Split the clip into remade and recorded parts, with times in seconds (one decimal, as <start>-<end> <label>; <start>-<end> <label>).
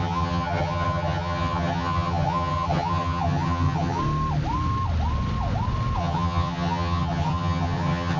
0.0-4.0 remade; 4.0-6.0 recorded; 6.0-8.2 remade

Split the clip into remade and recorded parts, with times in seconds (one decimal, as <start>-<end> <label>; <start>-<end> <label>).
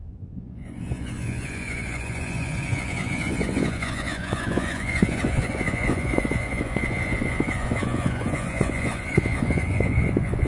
0.0-10.5 remade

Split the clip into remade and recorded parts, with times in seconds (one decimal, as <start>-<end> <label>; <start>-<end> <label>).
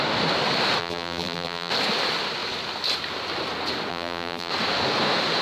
0.0-0.8 recorded; 0.8-1.7 remade; 1.7-3.9 recorded; 3.9-4.5 remade; 4.5-5.4 recorded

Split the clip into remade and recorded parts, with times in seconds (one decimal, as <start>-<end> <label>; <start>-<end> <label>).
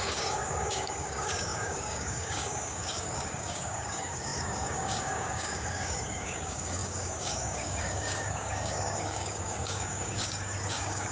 0.0-11.1 remade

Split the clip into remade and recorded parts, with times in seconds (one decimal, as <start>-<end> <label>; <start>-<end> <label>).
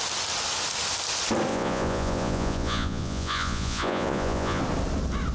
0.0-1.5 recorded; 1.5-4.6 remade; 4.6-5.3 recorded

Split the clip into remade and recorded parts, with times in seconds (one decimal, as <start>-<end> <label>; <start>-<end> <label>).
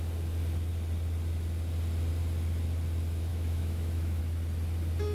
0.0-3.3 recorded; 3.3-4.2 remade; 4.2-5.1 recorded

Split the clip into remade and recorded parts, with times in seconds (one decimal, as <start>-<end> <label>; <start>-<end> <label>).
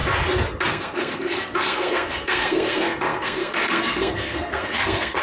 0.0-0.7 recorded; 0.7-5.2 remade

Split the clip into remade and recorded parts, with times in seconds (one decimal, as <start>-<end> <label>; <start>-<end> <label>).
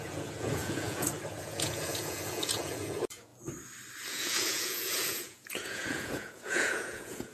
0.0-3.3 remade; 3.3-4.1 recorded; 4.1-7.3 remade